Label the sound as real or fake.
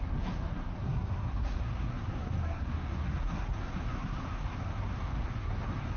fake